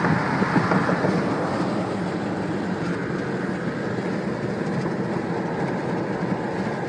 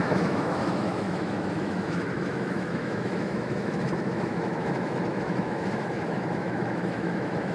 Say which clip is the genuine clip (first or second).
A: first